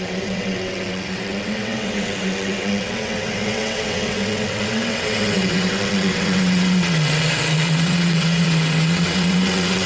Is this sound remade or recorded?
remade